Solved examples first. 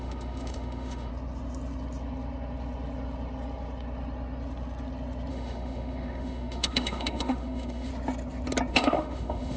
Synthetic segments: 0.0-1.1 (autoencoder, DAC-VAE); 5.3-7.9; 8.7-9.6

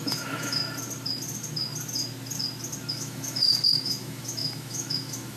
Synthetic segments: 0.0-0.6 (autoencoder, DAC-VAE); 2.9-5.4

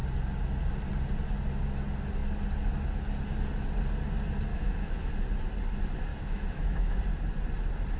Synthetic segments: 4.5-5.1 (autoencoder, DAC-VAE); 6.1-7.0

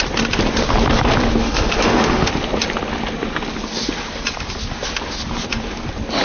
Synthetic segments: 1.4-2.3 (autoencoder, DAC-VAE)